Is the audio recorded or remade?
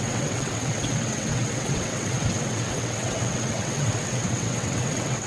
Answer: remade